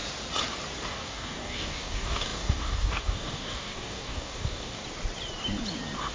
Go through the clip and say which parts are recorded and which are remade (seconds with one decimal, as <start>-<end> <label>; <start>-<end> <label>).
0.0-0.9 recorded; 0.9-4.8 remade; 4.8-6.1 recorded